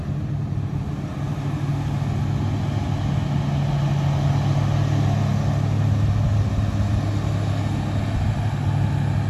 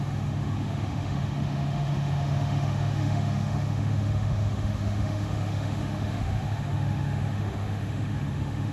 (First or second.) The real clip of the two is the first